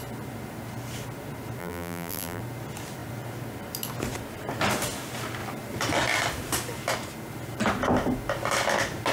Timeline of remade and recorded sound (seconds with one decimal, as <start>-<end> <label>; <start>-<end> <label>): 0.0-1.6 recorded; 1.6-2.4 remade; 2.4-9.1 recorded